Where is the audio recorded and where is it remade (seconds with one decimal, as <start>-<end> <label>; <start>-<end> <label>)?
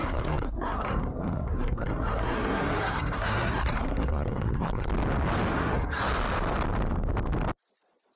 0.0-4.9 remade; 4.9-5.5 recorded; 5.5-6.0 remade; 6.0-8.2 recorded